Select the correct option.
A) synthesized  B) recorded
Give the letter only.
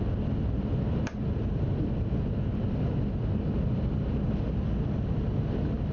B